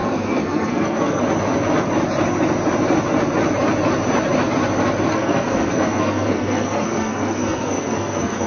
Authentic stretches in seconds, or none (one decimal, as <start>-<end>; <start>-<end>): 1.2-5.1